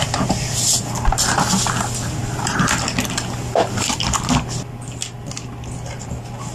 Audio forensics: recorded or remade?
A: recorded